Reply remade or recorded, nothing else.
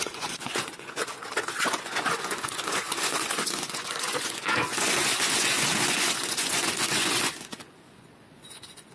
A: remade